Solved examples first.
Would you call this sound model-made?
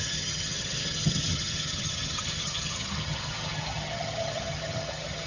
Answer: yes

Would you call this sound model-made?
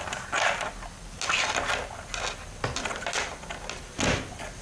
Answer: no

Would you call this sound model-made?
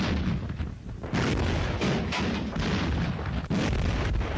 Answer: no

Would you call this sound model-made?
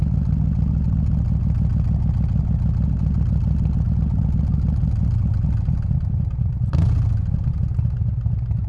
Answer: no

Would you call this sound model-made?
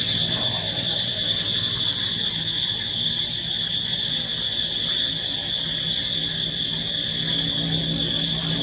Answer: no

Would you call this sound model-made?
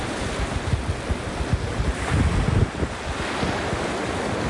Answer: no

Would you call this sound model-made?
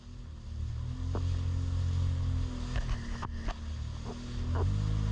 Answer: no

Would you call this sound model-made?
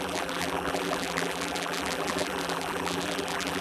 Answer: yes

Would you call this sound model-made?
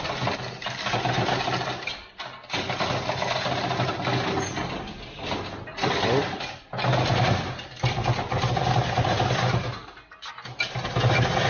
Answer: no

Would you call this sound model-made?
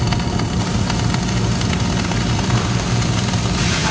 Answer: yes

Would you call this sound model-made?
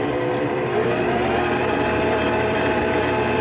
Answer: yes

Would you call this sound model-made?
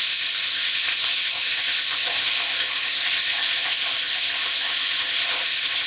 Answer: yes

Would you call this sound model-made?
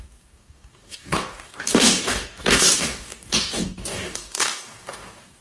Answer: yes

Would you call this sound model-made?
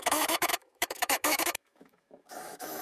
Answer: yes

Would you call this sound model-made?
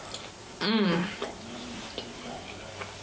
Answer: no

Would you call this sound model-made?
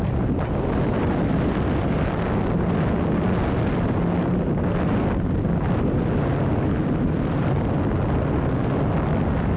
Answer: no